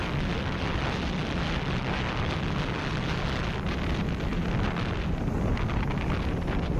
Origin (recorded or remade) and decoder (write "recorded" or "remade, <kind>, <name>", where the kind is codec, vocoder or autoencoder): recorded